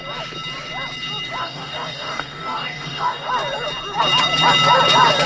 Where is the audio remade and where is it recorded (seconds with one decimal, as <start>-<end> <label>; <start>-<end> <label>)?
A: 0.0-1.4 recorded; 1.4-3.3 remade; 3.3-5.3 recorded